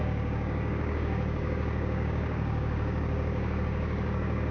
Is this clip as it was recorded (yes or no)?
no